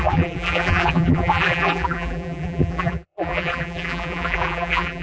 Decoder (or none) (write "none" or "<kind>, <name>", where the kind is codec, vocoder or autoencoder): vocoder, BigVGAN v2